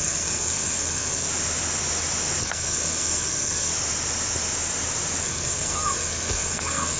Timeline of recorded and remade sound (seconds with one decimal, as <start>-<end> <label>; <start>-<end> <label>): 0.0-1.3 remade; 1.3-2.4 recorded; 2.4-3.7 remade; 3.7-5.2 recorded; 5.2-7.0 remade